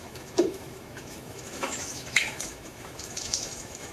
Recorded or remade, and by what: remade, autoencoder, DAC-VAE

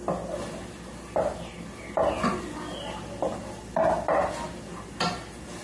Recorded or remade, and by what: recorded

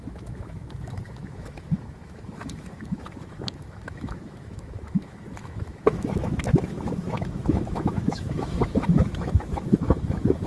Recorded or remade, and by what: remade, autoencoder, DAC-VAE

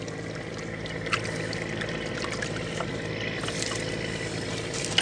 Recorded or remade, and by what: recorded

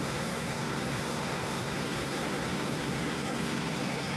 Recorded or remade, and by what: remade, codec, SNAC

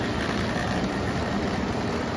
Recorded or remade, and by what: recorded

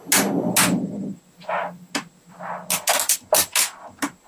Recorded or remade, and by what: recorded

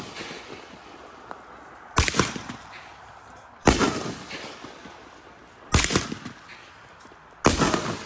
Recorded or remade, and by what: recorded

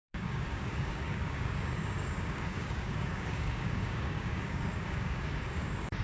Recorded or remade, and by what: remade, codec, DAC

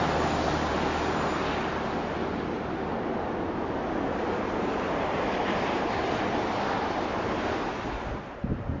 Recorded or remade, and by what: recorded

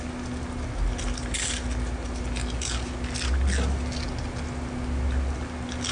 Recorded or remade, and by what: recorded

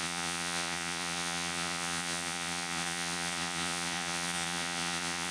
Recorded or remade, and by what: remade, vocoder, Vocos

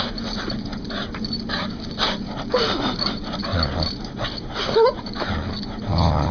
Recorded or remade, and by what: recorded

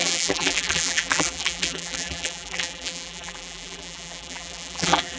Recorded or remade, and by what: remade, vocoder, BigVGAN v2